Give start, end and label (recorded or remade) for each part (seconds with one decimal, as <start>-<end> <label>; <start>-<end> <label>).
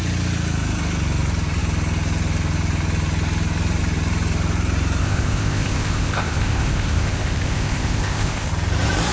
0.0-5.0 recorded; 5.0-8.5 remade; 8.5-9.1 recorded